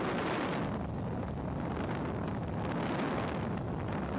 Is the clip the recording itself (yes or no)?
yes